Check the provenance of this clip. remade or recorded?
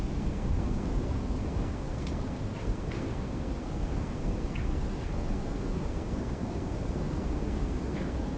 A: remade